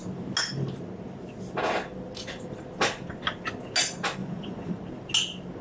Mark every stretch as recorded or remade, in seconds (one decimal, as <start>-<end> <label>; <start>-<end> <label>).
0.0-4.2 recorded; 4.2-4.8 remade; 4.8-5.6 recorded